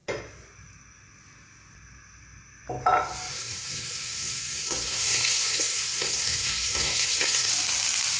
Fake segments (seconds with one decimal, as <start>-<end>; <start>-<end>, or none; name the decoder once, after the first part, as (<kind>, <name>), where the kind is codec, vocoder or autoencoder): 3.3-7.5 (codec, SNAC)